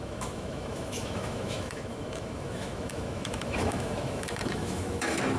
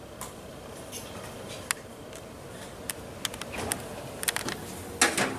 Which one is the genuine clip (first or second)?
second